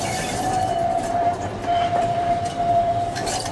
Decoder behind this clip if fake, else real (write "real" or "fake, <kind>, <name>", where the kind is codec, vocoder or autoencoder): fake, vocoder, BigVGAN v2